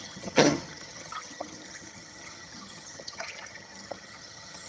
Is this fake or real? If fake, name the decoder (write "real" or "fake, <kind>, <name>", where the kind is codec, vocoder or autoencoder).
fake, vocoder, HiFi-GAN